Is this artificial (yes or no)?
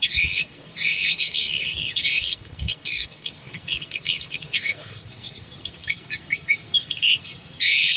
yes